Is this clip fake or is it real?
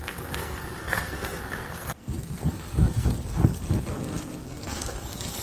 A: fake